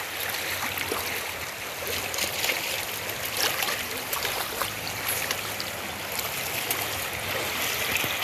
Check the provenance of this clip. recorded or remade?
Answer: recorded